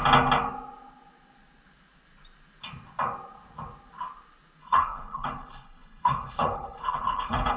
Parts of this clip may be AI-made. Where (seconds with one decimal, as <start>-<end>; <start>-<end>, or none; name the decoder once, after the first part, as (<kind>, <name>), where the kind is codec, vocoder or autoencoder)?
4.6-7.6 (codec, HILCodec)